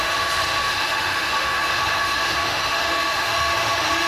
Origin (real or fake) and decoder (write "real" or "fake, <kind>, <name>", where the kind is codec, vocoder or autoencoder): fake, autoencoder, DAC-VAE